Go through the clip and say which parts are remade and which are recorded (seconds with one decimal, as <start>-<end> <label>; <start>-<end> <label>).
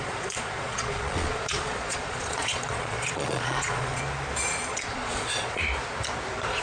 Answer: 0.0-4.0 remade; 4.0-4.7 recorded; 4.7-5.6 remade; 5.6-6.6 recorded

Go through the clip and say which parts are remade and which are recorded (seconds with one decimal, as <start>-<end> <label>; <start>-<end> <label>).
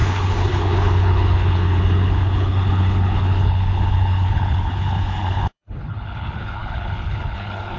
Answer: 0.0-7.8 remade